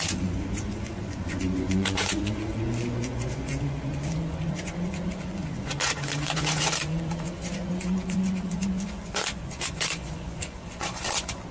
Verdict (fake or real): fake